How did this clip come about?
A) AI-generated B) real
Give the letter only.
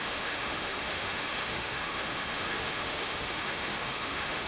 A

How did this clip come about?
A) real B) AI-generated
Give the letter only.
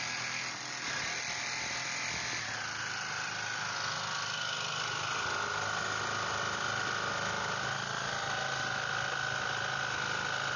A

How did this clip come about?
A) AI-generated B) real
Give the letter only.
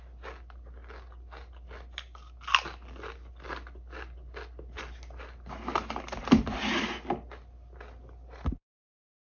B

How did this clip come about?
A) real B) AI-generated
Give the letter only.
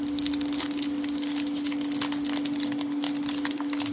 A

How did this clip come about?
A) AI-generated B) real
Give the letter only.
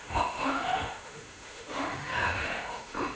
A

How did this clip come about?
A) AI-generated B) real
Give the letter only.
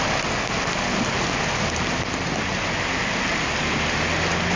B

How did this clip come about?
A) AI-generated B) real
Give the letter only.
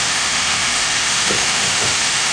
A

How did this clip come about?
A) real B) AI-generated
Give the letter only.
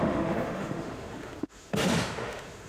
B